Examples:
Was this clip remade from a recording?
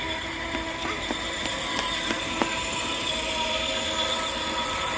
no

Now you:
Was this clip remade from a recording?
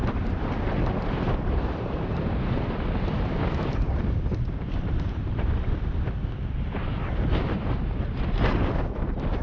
yes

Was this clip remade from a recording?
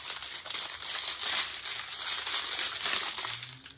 no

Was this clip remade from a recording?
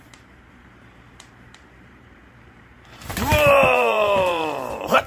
yes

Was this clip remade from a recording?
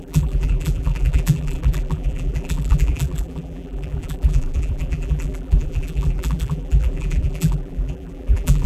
yes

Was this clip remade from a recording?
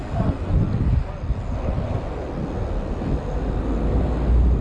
no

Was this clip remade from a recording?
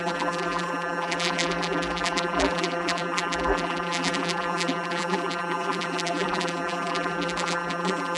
yes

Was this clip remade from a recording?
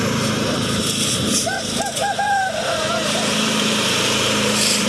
yes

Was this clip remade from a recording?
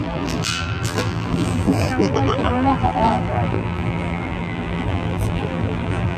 yes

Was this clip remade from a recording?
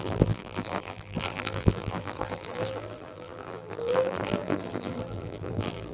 yes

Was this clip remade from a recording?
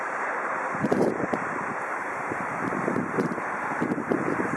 yes